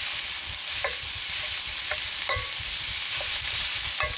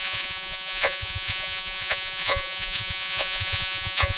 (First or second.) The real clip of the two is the first